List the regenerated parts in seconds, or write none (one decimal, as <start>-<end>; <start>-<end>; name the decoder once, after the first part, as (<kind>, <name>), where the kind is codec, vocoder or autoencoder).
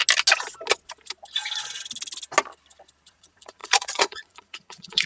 3.1-5.1 (vocoder, Vocos)